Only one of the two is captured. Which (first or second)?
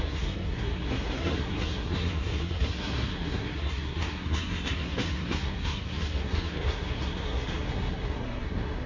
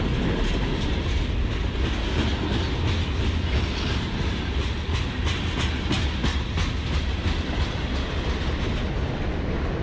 second